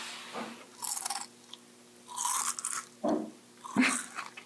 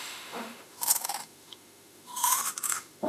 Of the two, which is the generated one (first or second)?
second